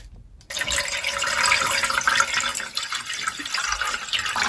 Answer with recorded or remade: remade